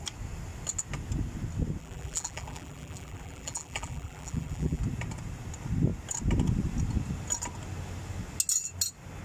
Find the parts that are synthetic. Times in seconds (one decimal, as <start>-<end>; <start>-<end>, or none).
1.8-4.8